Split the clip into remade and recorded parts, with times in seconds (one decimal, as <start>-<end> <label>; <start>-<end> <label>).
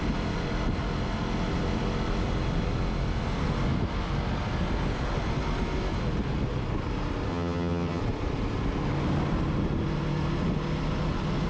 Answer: 0.0-7.3 recorded; 7.3-8.0 remade; 8.0-11.5 recorded